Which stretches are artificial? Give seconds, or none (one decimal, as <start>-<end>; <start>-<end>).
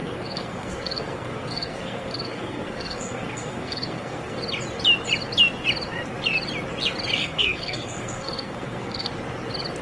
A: 0.0-4.4; 7.2-9.1